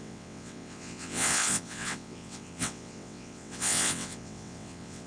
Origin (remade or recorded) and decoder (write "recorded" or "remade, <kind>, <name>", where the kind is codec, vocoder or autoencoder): remade, vocoder, WaveNeXt